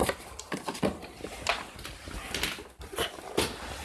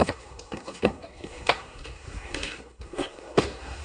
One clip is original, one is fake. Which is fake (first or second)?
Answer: second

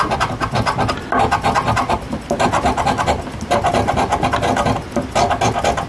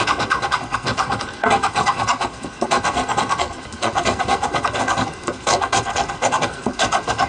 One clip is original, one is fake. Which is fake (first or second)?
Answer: second